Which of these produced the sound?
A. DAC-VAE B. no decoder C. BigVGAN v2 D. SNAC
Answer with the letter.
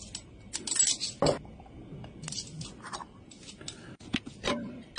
B